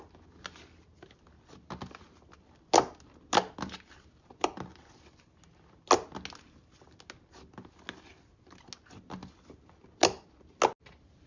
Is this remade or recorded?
recorded